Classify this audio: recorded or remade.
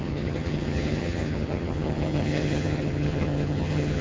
remade